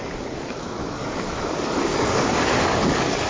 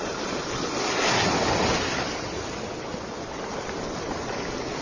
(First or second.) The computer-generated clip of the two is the first